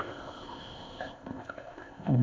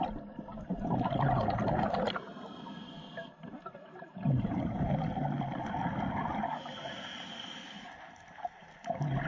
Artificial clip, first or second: first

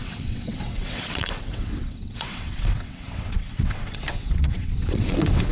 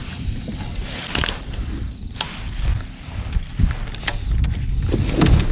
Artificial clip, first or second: first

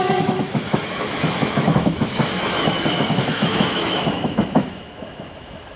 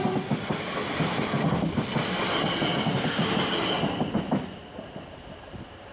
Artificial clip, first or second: first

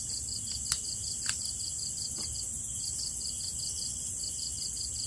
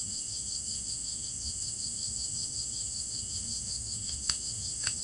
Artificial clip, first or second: second